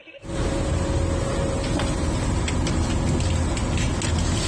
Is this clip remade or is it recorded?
recorded